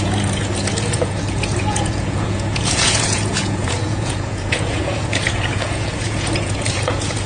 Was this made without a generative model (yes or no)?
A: no